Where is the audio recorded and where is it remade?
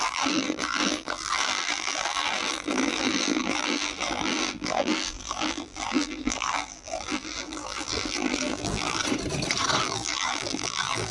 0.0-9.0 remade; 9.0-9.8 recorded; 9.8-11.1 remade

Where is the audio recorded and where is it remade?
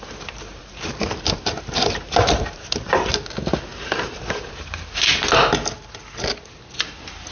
0.0-0.5 recorded; 0.5-3.1 remade; 3.1-3.7 recorded; 3.7-5.5 remade; 5.5-7.3 recorded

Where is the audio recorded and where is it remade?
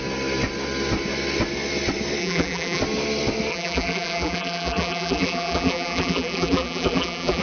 0.0-2.2 recorded; 2.2-2.8 remade; 2.8-3.5 recorded; 3.5-7.4 remade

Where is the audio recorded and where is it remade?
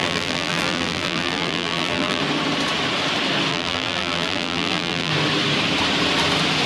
0.0-2.2 remade; 2.2-3.5 recorded; 3.5-5.1 remade; 5.1-6.7 recorded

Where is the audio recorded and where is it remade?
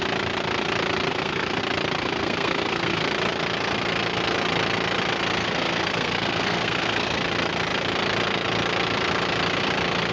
0.0-1.1 recorded; 1.1-1.6 remade; 1.6-2.0 recorded; 2.0-3.0 remade; 3.0-5.4 recorded; 5.4-7.2 remade; 7.2-10.1 recorded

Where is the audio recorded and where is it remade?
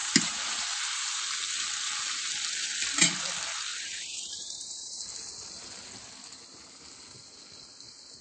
0.0-0.9 remade; 0.9-3.7 recorded; 3.7-5.0 remade; 5.0-8.2 recorded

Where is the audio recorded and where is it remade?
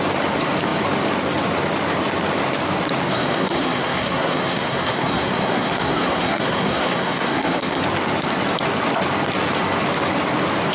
0.0-3.1 recorded; 3.1-7.8 remade; 7.8-10.7 recorded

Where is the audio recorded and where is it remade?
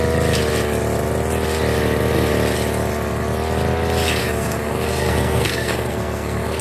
0.0-4.2 recorded; 4.2-6.6 remade